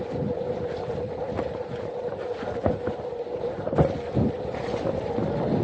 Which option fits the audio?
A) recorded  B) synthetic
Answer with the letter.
A